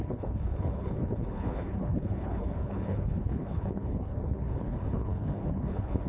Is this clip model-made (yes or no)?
yes